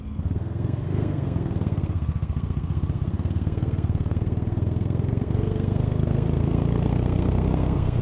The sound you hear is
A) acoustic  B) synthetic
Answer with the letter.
B